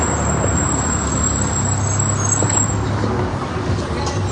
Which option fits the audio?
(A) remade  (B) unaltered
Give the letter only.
B